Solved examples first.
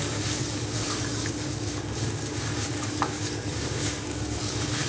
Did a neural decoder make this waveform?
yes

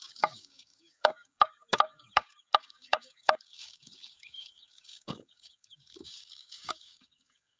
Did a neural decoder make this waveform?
yes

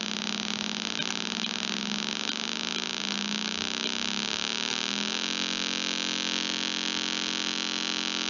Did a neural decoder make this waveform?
no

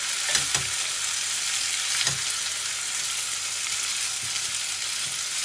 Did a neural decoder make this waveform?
no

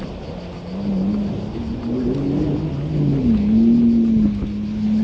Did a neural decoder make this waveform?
no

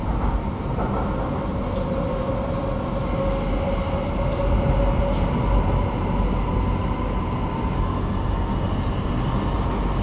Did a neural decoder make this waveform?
no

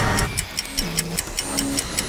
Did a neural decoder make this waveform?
no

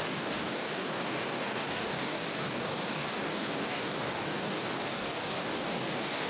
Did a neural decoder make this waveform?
yes